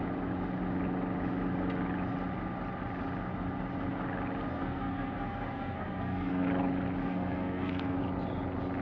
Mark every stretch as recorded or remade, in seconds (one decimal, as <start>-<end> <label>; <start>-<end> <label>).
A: 0.0-4.5 recorded; 4.5-6.5 remade; 6.5-7.0 recorded; 7.0-8.0 remade; 8.0-8.8 recorded